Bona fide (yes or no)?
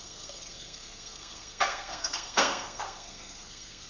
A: no